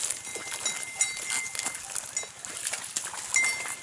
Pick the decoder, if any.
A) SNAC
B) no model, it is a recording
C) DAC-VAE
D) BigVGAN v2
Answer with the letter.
B